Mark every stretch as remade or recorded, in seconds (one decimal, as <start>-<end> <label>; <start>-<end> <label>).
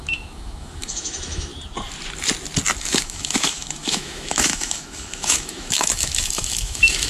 0.0-1.5 remade; 1.5-2.8 recorded; 2.8-7.1 remade